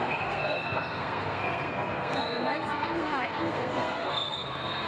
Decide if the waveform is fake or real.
fake